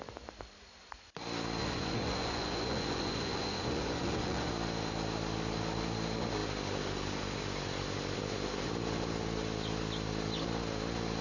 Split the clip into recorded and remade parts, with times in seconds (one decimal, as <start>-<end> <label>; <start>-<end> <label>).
0.0-1.6 recorded; 1.6-4.5 remade; 4.5-11.2 recorded